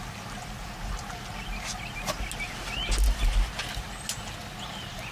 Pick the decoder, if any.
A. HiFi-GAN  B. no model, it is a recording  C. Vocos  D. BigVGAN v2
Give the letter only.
B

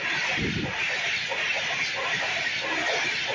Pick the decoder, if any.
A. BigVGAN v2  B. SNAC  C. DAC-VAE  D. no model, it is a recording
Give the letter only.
D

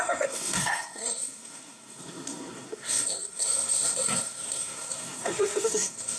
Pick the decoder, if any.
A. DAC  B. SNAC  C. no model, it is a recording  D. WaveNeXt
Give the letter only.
B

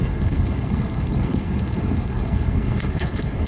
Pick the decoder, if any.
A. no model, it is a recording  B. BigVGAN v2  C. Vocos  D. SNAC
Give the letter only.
D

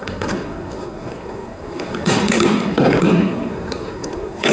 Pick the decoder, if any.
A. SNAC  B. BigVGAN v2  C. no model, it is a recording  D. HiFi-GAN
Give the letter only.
A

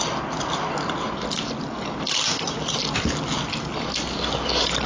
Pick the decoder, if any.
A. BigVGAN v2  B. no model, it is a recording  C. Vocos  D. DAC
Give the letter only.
B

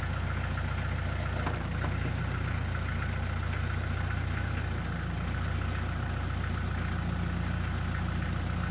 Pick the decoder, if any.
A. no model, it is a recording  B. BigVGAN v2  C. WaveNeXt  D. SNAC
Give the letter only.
A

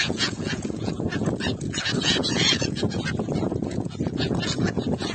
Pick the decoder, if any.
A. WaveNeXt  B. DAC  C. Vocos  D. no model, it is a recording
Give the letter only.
C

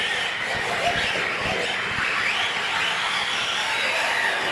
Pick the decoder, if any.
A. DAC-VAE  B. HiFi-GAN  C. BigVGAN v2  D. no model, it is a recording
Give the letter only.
D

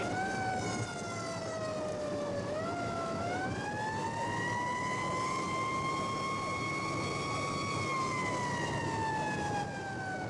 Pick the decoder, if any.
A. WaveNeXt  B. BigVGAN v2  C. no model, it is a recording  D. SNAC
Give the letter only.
C